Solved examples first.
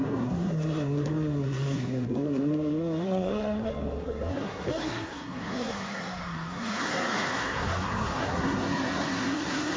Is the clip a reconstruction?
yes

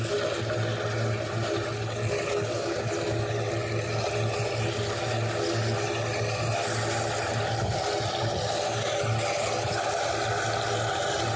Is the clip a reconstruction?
no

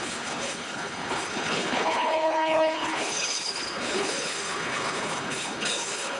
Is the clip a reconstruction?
yes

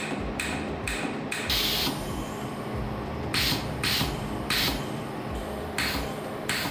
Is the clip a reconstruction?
yes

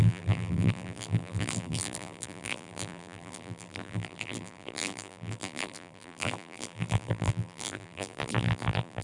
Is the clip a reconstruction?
yes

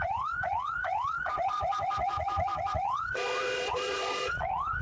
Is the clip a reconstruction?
yes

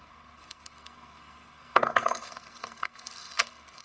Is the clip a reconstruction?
yes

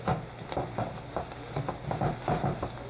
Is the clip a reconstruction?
no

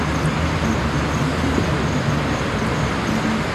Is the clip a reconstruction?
no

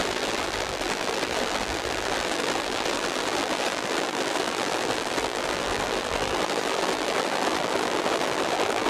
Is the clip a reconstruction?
yes